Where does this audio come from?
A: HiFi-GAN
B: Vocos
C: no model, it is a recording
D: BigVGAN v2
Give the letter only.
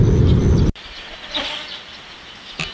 C